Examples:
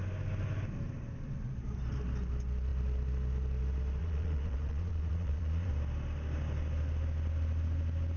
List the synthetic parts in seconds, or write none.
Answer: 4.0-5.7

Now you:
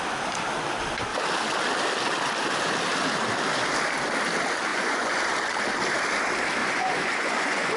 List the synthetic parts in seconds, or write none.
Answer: 4.7-5.2; 6.6-7.8

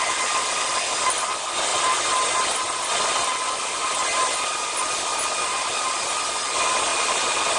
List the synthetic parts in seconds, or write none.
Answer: none